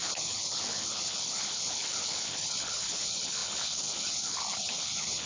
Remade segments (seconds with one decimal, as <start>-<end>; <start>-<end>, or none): 0.0-5.3